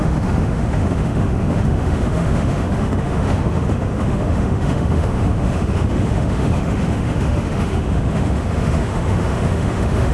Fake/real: fake